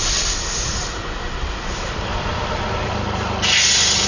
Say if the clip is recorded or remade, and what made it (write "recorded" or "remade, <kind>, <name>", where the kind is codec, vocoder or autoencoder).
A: recorded